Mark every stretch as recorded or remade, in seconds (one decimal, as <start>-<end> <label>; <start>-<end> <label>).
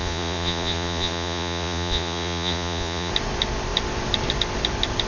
0.0-3.1 remade; 3.1-5.1 recorded